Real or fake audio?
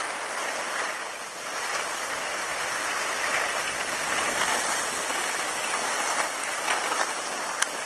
real